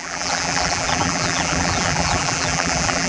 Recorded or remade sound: remade